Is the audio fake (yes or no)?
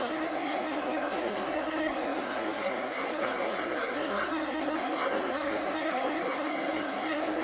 yes